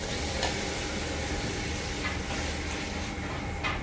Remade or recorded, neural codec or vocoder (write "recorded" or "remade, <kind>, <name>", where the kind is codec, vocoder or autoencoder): recorded